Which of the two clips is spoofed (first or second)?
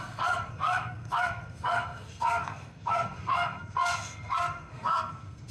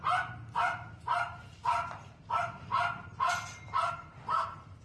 first